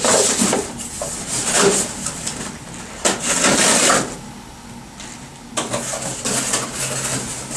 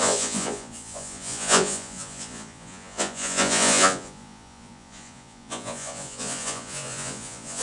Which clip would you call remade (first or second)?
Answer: second